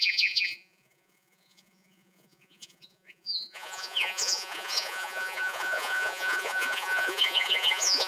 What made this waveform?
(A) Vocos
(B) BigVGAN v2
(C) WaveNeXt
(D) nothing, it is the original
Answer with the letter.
A